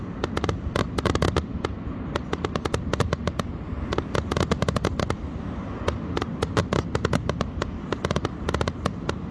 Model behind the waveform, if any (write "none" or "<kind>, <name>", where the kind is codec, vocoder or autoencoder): none